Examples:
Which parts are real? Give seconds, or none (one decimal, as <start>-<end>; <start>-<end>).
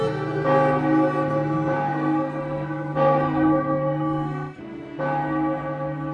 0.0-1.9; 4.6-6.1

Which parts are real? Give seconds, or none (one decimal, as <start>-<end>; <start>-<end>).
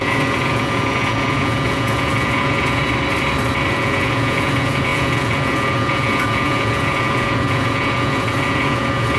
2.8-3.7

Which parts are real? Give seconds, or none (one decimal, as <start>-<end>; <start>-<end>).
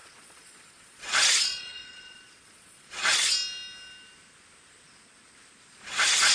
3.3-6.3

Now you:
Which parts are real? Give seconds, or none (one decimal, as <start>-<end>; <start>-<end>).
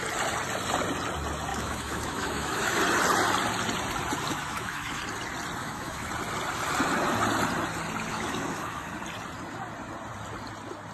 0.0-1.5; 2.8-4.3; 5.0-5.6; 6.1-8.1; 8.9-10.9